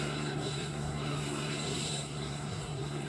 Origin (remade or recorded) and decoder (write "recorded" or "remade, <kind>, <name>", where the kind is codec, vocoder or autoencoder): remade, codec, SNAC